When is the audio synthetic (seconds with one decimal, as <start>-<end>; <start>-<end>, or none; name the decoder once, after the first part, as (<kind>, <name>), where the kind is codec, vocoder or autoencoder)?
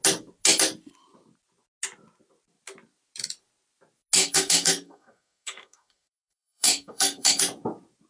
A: 4.2-7.4 (codec, SNAC)